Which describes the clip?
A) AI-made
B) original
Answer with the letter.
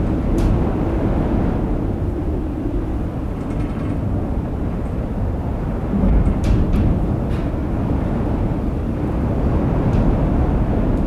B